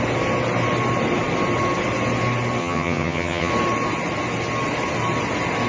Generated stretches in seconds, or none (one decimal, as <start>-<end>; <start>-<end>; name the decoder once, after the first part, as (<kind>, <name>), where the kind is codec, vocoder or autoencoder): 2.6-3.5 (vocoder, HiFi-GAN)